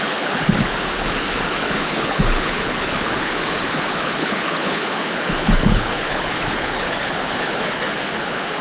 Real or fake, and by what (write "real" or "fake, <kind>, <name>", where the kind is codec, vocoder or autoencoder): fake, codec, HILCodec